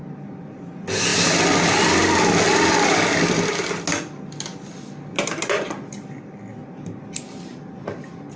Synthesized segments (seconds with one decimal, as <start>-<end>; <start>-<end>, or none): none